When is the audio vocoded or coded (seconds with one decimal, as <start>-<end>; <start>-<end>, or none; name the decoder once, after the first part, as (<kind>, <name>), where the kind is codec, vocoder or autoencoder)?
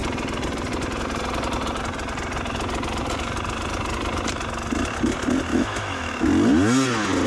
5.5-6.3 (autoencoder, DAC-VAE)